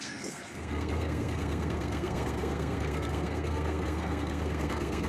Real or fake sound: fake